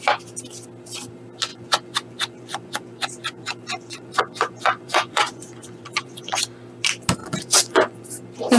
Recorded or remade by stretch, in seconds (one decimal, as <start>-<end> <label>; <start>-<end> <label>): 0.0-1.5 recorded; 1.5-6.4 remade; 6.4-7.2 recorded; 7.2-8.2 remade; 8.2-8.6 recorded